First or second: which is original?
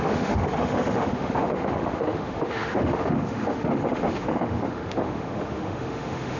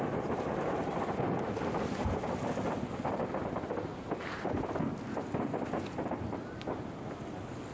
second